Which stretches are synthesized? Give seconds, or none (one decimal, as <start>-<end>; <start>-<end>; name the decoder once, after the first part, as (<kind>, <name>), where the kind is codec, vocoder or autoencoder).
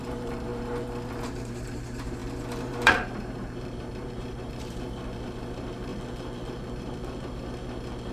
0.0-5.9 (vocoder, BigVGAN v2)